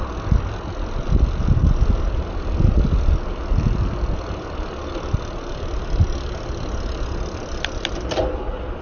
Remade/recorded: recorded